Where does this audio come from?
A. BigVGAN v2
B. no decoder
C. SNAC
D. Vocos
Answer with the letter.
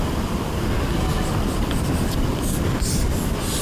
B